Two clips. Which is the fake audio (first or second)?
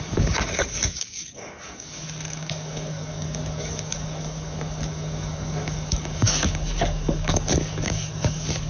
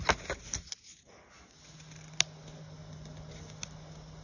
first